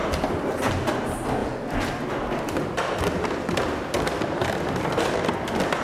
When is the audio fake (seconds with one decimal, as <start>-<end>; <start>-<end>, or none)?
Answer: 1.4-3.6